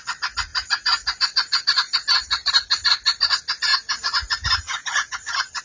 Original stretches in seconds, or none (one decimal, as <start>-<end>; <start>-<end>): 0.0-0.5; 2.5-3.7